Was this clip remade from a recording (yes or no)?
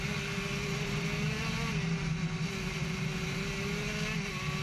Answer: no